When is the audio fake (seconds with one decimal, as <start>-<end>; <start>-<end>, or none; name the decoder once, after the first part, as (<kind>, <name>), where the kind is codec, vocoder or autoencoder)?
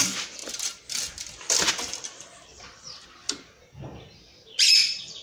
0.0-0.4 (vocoder, BigVGAN v2); 1.7-3.2; 4.8-5.2